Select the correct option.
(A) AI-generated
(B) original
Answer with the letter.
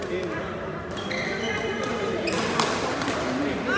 B